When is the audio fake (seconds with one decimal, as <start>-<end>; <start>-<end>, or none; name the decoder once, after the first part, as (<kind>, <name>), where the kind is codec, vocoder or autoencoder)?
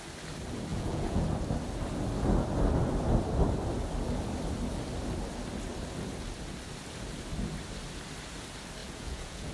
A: 0.7-1.2 (vocoder, Vocos); 8.8-9.5